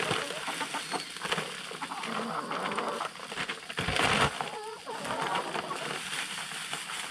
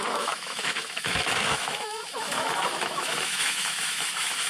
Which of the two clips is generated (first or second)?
second